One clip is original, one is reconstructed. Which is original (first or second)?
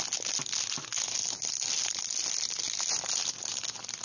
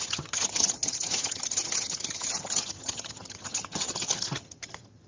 first